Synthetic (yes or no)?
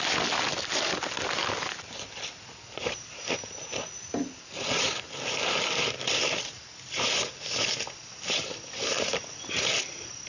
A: no